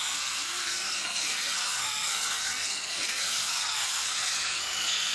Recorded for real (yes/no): no